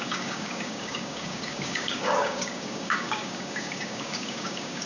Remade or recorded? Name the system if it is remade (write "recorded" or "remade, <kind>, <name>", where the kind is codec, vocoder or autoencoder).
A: remade, codec, DAC